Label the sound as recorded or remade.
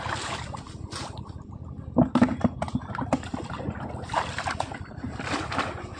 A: recorded